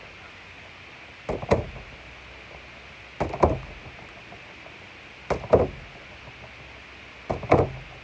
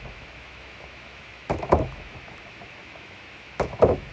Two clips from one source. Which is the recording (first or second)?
first